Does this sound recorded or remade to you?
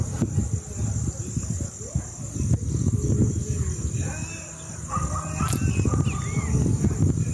recorded